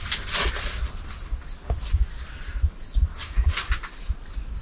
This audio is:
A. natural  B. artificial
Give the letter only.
A